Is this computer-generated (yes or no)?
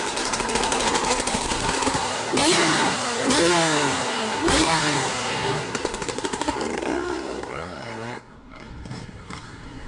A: yes